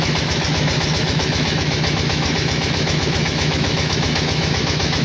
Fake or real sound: fake